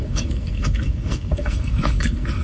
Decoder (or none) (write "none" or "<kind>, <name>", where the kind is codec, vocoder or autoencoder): codec, SNAC